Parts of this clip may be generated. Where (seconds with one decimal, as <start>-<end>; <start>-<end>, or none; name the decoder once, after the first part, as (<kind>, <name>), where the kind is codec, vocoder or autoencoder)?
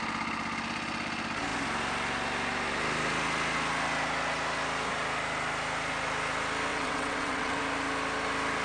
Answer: 6.7-7.6 (vocoder, WaveNeXt)